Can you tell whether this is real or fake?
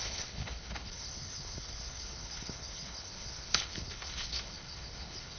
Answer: fake